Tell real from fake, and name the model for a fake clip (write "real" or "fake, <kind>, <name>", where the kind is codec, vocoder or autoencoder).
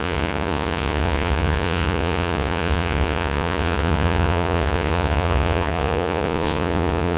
fake, vocoder, Vocos